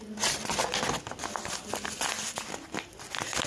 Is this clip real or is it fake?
real